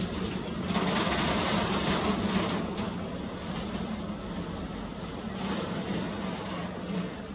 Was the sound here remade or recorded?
recorded